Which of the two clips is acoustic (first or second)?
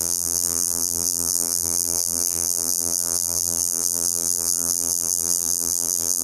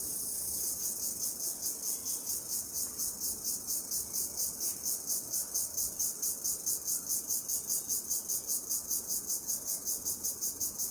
second